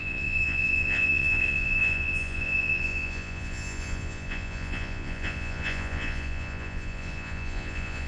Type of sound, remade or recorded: remade